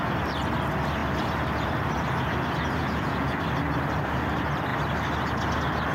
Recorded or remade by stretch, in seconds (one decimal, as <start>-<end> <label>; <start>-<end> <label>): 0.0-2.8 recorded; 2.8-3.4 remade; 3.4-5.9 recorded